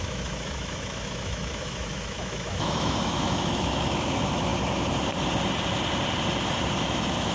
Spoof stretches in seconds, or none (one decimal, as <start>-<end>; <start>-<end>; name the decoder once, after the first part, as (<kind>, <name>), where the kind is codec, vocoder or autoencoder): 0.0-4.5 (autoencoder, DAC-VAE); 6.8-7.3